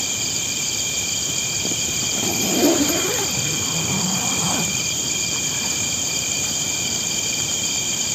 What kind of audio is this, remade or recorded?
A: remade